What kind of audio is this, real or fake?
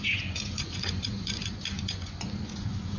fake